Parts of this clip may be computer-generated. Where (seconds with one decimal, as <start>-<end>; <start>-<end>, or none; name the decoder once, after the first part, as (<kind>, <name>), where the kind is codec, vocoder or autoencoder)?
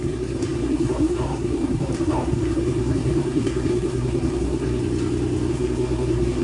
0.0-4.8 (codec, SNAC); 5.5-6.4